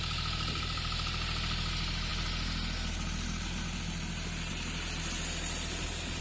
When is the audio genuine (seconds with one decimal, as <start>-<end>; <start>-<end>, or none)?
0.0-6.2